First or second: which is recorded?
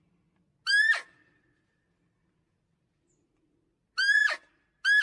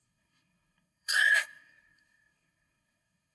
first